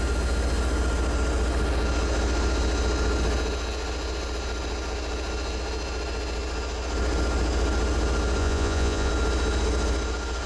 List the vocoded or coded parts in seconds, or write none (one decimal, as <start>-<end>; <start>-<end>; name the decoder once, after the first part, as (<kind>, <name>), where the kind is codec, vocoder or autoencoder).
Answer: 8.4-9.1 (vocoder, Vocos)